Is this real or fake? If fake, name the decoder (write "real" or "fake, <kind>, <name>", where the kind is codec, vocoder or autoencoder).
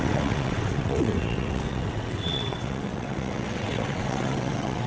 fake, vocoder, WaveNeXt